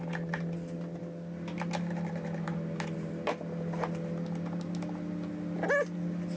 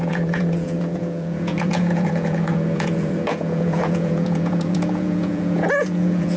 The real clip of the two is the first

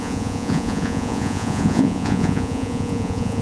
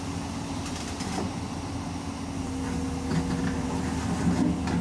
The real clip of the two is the second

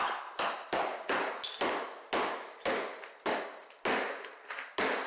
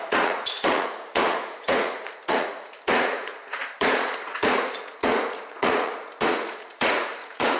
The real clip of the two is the first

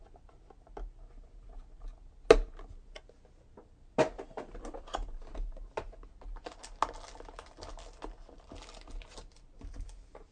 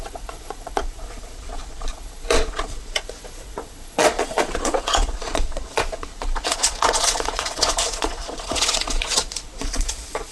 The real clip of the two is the first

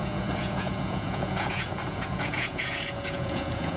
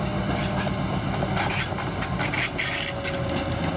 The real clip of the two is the second